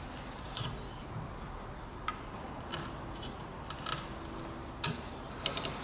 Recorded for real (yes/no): yes